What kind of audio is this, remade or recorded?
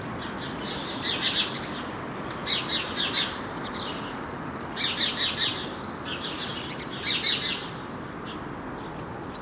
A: recorded